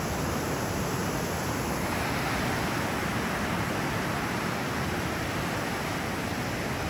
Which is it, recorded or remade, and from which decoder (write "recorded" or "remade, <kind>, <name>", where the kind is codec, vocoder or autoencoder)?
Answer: recorded